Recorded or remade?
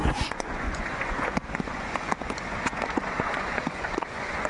remade